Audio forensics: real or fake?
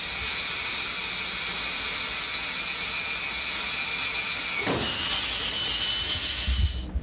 real